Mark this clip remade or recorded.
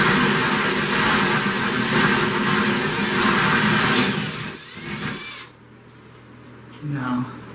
recorded